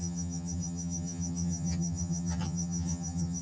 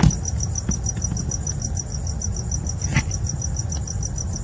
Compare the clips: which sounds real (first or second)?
second